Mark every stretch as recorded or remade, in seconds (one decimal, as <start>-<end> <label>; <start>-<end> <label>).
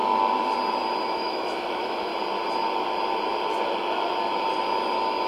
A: 0.0-1.0 recorded; 1.0-2.1 remade; 2.1-5.3 recorded